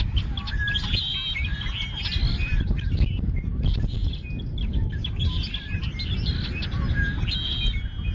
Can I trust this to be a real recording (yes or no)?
yes